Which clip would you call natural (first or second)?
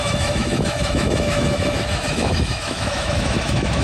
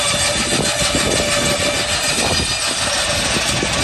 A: second